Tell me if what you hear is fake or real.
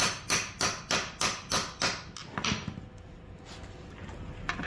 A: real